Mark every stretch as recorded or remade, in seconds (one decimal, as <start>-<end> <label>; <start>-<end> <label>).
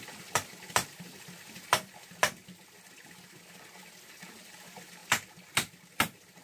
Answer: 0.0-6.4 recorded